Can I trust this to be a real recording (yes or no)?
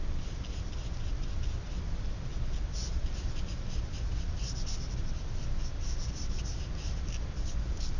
yes